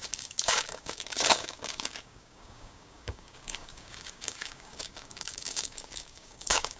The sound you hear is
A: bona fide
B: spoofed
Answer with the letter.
B